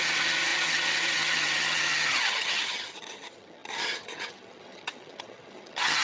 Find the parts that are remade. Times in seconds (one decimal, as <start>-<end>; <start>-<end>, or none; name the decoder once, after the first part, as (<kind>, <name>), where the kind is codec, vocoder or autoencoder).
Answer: 0.0-6.0 (vocoder, HiFi-GAN)